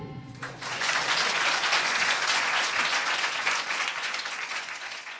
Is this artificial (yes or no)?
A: yes